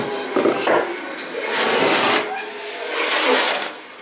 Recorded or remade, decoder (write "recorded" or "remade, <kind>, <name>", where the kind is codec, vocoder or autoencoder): recorded